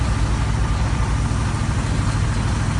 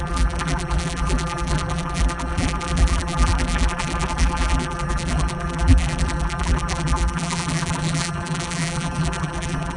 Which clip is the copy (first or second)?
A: second